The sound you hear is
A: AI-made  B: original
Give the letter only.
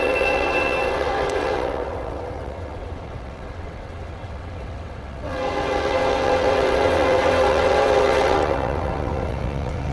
A